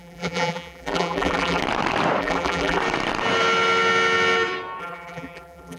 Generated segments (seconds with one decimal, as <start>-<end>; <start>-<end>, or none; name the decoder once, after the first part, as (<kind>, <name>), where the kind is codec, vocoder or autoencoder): 0.0-1.6 (vocoder, BigVGAN v2); 2.2-2.8; 4.8-5.8